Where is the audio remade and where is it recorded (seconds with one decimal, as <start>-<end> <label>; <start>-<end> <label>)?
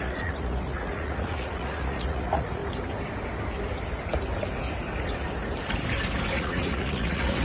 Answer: 0.0-2.6 remade; 2.6-6.3 recorded; 6.3-7.4 remade